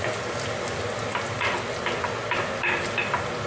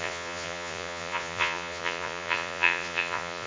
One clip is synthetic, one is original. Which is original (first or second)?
first